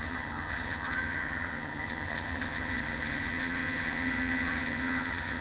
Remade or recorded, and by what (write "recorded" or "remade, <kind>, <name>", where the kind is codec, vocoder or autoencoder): remade, vocoder, HiFi-GAN